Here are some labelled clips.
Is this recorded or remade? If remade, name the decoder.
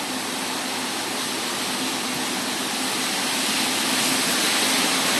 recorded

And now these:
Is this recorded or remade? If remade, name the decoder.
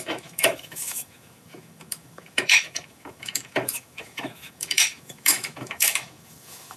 remade, autoencoder, DAC-VAE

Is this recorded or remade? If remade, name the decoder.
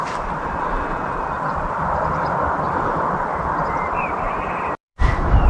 remade, vocoder, BigVGAN v2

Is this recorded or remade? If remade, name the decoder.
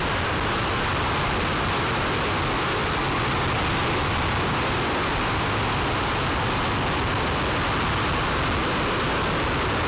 recorded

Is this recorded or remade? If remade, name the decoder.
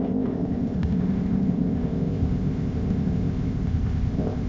remade, codec, ZipCodec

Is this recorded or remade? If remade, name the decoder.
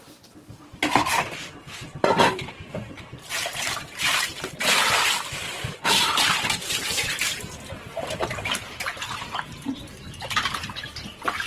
remade, vocoder, BigVGAN v2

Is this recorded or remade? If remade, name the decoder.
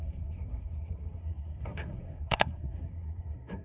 remade, codec, SNAC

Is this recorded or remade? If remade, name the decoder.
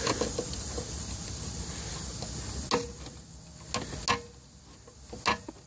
recorded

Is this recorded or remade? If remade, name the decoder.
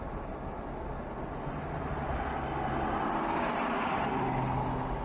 recorded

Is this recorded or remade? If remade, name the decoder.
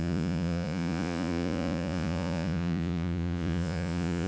remade, vocoder, Vocos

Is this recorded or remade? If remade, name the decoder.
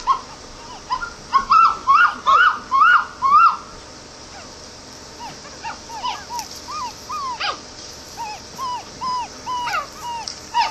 recorded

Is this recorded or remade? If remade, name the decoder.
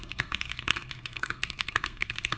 remade, codec, SNAC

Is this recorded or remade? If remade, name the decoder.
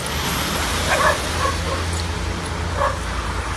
recorded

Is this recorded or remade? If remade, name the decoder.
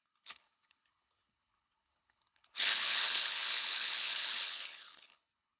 remade, codec, HILCodec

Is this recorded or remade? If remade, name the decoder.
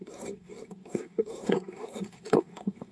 remade, codec, SNAC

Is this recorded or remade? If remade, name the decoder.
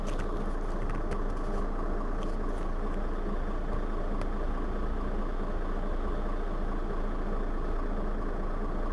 recorded